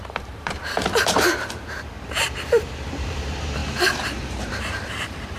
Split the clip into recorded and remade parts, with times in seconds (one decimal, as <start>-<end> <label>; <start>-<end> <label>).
0.0-5.4 remade

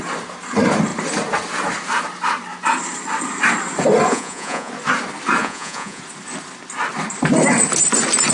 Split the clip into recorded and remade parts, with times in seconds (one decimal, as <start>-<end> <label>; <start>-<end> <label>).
0.0-4.1 recorded; 4.1-4.7 remade; 4.7-5.4 recorded; 5.4-6.0 remade; 6.0-8.3 recorded

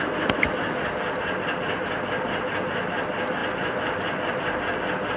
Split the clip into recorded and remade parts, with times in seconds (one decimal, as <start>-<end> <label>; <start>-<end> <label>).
0.0-5.2 recorded

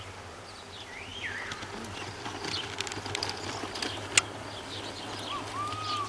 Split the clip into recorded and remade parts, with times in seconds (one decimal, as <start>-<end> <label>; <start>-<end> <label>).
0.0-6.1 recorded

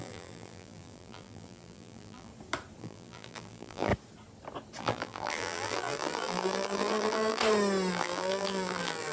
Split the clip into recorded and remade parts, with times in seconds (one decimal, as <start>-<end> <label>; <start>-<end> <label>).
0.0-2.3 remade; 2.3-2.8 recorded; 2.8-3.9 remade; 3.9-4.8 recorded; 4.8-7.4 remade; 7.4-7.9 recorded; 7.9-9.1 remade

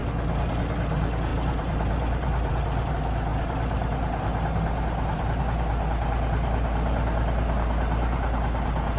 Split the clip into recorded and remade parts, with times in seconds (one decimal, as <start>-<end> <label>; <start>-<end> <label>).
0.0-1.3 recorded; 1.3-2.9 remade; 2.9-3.3 recorded; 3.3-5.4 remade; 5.4-9.0 recorded

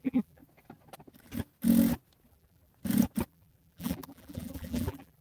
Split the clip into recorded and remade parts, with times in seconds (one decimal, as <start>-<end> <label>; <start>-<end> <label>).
0.0-0.4 remade; 0.4-2.3 recorded; 2.3-2.7 remade; 2.7-3.3 recorded; 3.3-5.2 remade

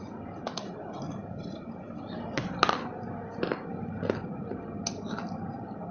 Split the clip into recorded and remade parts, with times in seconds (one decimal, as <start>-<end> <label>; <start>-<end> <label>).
0.0-5.9 recorded